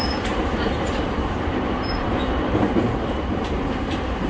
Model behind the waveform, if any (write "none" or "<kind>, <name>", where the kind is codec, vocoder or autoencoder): vocoder, BigVGAN v2